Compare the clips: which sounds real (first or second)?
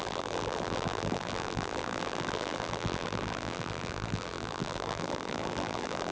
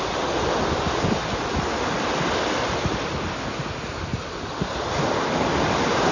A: second